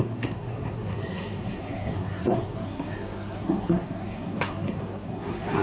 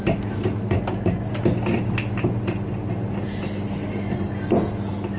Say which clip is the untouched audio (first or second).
second